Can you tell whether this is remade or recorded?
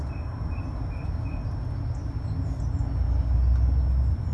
recorded